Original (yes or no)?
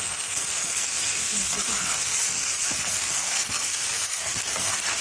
no